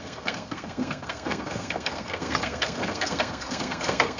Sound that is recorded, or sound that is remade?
remade